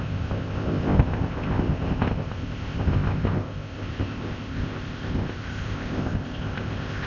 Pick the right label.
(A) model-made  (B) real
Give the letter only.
A